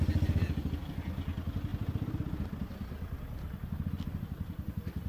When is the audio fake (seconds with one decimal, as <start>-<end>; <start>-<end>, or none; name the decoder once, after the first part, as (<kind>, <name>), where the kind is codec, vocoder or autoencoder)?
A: 1.7-5.1 (vocoder, BigVGAN v2)

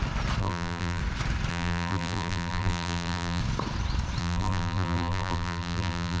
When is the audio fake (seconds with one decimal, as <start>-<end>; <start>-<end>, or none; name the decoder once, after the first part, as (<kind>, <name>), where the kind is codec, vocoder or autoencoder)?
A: 0.4-1.0 (vocoder, BigVGAN v2); 1.5-3.4; 4.2-6.2

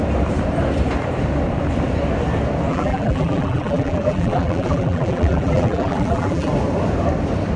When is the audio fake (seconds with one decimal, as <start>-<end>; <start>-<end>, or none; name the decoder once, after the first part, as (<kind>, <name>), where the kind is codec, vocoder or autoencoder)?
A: 2.7-6.5 (vocoder, BigVGAN v2)

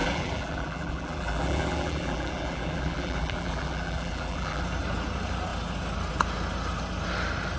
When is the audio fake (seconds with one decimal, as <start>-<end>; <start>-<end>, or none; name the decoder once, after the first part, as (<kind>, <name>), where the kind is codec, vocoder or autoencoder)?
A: 0.0-4.6 (vocoder, BigVGAN v2)

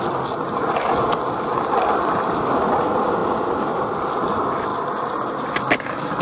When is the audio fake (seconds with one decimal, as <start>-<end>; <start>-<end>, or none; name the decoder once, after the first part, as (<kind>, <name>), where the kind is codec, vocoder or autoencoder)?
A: 3.2-4.1 (vocoder, BigVGAN v2)

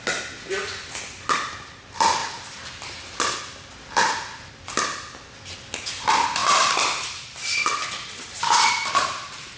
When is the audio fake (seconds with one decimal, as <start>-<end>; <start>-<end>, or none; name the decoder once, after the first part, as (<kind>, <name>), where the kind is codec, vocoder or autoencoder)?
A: none